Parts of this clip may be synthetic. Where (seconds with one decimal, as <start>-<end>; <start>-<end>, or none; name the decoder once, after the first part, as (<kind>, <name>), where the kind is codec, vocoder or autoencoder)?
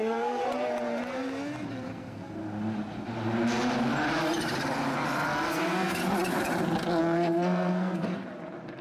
0.0-0.4 (codec, SNAC); 1.7-2.4; 5.5-6.0; 7.0-8.1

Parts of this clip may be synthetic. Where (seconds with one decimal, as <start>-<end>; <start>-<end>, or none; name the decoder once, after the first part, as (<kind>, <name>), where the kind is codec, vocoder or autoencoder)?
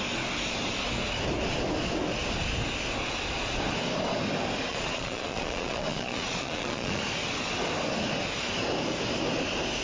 4.7-7.0 (vocoder, Vocos)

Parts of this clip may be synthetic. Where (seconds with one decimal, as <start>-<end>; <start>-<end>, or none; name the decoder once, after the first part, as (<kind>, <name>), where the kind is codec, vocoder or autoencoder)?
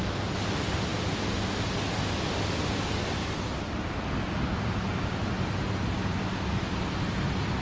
none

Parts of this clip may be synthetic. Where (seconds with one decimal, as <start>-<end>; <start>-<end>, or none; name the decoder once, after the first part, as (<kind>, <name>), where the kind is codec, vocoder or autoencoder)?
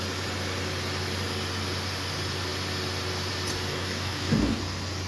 3.7-4.6 (codec, DAC)